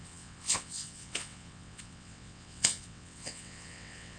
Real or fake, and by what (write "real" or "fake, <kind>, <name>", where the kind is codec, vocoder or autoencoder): fake, vocoder, WaveNeXt